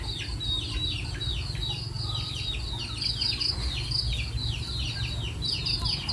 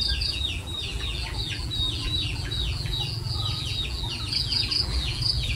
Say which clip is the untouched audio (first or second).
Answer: first